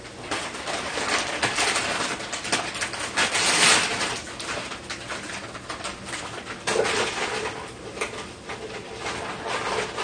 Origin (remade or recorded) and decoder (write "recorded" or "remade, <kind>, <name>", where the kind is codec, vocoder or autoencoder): recorded